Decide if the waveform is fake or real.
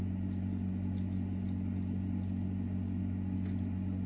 real